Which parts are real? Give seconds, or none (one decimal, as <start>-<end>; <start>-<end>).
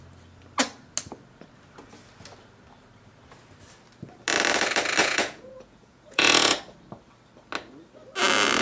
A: 0.0-5.0; 6.6-8.6